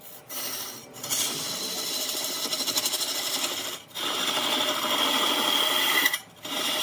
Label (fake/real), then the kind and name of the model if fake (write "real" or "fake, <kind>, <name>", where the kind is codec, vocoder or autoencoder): real